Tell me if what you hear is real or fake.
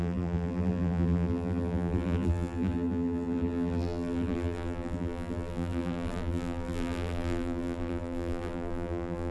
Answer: fake